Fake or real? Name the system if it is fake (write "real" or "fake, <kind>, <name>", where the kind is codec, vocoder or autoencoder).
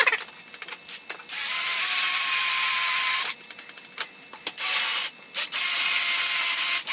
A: real